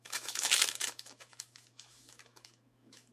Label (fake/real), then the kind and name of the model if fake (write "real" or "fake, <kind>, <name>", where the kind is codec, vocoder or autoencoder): fake, autoencoder, DAC-VAE